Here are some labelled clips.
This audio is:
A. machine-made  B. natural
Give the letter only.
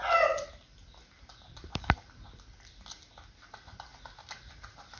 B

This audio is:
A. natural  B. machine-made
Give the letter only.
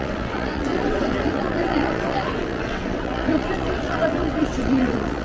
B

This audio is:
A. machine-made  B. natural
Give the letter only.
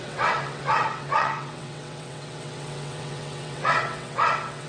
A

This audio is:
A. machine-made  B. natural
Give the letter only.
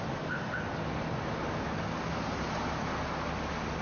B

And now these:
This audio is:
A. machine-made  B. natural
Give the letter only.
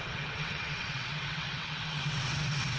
A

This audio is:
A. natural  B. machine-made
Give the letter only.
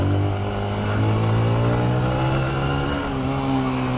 A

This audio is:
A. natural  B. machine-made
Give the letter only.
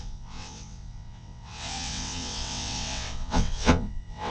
B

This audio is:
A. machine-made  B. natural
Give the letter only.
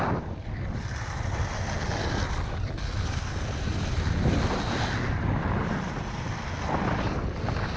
B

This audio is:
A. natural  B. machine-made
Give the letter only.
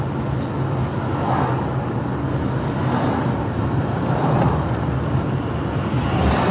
A